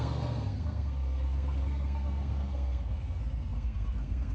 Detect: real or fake fake